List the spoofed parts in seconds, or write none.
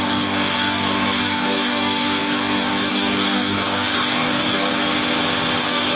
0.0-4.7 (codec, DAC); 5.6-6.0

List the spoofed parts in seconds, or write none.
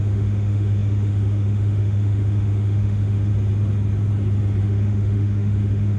0.0-3.3 (autoencoder, DAC-VAE); 4.6-6.0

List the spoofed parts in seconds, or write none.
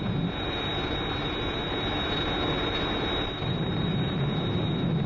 none